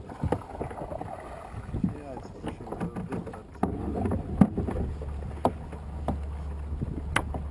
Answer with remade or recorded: recorded